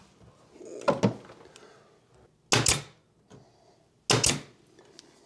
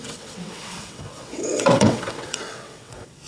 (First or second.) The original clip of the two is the first